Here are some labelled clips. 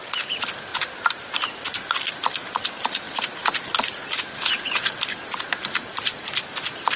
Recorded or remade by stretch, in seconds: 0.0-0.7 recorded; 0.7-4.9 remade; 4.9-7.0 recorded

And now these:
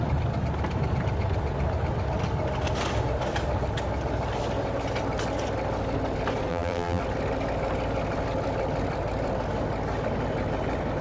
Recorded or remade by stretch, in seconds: 0.0-6.5 recorded; 6.5-7.0 remade; 7.0-11.0 recorded